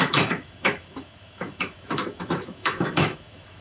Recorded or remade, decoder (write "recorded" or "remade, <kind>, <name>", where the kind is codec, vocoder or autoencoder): remade, autoencoder, DAC-VAE